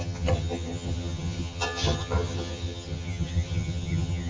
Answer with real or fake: fake